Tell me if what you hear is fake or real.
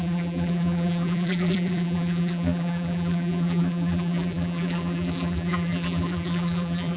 fake